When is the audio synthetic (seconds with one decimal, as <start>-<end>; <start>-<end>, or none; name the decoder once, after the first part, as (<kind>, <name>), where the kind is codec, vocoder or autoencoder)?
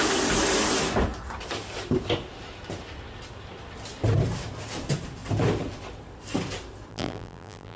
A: 6.9-7.8 (vocoder, BigVGAN v2)